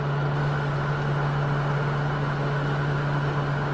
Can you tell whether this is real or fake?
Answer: real